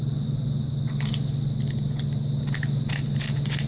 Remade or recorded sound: recorded